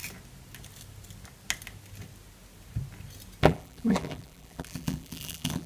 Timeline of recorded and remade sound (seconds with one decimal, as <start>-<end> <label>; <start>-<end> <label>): 0.0-3.4 recorded; 3.4-5.7 remade